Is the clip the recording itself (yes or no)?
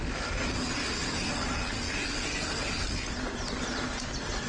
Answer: yes